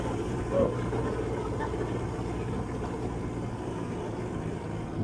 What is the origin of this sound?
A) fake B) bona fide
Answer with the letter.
B